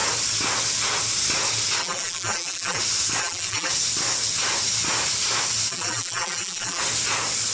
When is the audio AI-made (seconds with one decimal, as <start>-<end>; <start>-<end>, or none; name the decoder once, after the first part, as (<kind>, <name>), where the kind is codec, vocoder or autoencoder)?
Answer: 1.8-2.8 (vocoder, BigVGAN v2); 3.2-3.7; 5.7-6.8